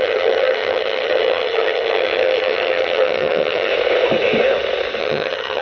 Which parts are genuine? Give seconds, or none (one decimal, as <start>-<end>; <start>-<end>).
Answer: 3.7-5.0